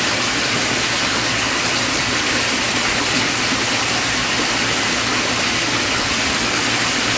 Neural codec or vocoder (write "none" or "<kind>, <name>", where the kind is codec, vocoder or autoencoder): none